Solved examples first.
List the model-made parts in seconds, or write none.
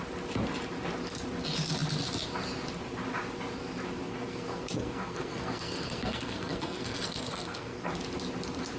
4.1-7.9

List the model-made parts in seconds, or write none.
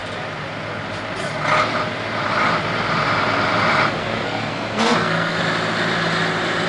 4.0-5.4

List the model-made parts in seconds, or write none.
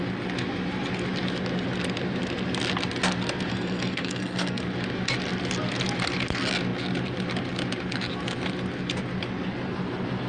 3.5-4.6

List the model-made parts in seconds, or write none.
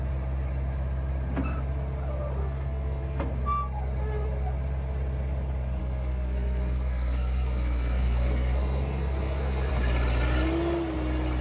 2.4-3.2; 5.8-9.7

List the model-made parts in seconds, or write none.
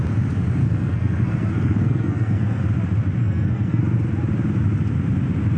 0.6-2.6; 3.2-3.8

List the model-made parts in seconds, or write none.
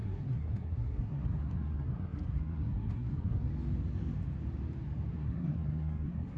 0.0-3.5; 5.1-6.4